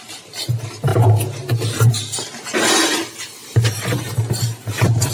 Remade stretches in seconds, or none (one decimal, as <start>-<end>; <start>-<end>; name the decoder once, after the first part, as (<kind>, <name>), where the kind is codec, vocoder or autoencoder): none